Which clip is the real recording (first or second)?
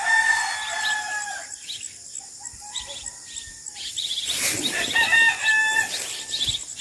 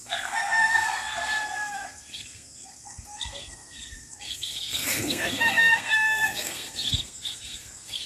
first